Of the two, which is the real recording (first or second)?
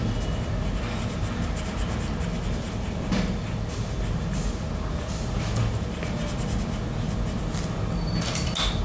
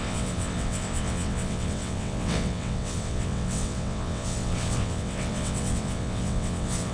first